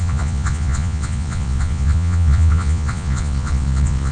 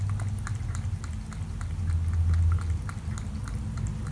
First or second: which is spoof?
first